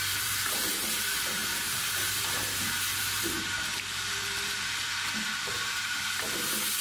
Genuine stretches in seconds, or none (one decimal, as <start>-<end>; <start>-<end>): none